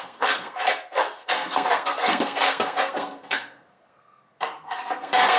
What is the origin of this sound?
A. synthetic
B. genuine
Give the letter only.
A